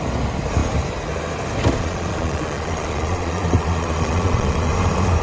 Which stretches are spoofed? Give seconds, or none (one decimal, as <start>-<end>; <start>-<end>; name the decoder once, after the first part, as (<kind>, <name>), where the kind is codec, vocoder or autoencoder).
1.8-4.7 (vocoder, Vocos)